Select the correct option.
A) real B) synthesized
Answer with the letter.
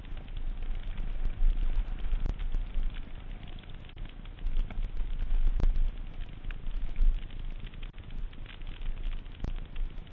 A